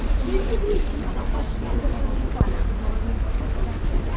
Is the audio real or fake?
real